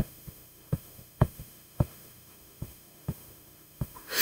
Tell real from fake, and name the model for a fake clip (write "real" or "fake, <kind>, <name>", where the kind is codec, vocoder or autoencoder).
fake, autoencoder, DAC-VAE